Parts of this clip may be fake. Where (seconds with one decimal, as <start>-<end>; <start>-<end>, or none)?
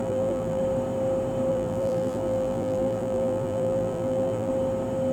0.0-0.6; 1.5-4.5